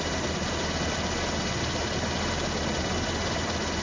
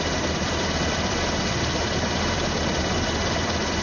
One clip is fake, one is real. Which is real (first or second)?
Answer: first